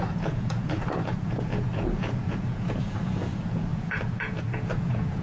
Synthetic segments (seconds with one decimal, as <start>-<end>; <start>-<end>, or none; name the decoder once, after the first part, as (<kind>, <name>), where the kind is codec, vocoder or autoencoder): 0.0-5.2 (vocoder, Vocos)

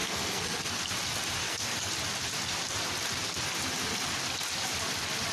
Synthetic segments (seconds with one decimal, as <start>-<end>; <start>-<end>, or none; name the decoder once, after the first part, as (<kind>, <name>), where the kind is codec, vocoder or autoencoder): 0.0-0.8 (codec, SNAC); 1.4-1.9

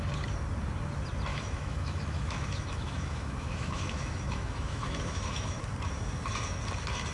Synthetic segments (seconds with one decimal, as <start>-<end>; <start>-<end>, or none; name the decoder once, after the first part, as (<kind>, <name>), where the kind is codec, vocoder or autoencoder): 1.3-5.6 (autoencoder, DAC-VAE)

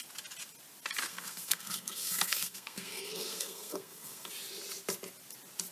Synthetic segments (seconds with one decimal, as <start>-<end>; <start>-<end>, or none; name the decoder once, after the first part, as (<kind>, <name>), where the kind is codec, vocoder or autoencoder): 1.1-4.3 (codec, SNAC)

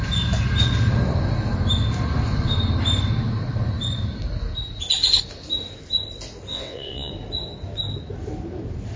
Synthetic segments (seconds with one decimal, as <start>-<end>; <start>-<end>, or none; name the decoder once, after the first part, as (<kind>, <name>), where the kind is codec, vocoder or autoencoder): 6.5-7.1 (vocoder, WaveNeXt)

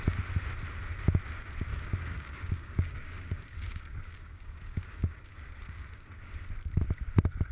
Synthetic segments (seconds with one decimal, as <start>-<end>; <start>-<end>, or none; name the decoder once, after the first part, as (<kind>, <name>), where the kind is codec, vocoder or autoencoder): 1.7-6.2 (codec, DAC)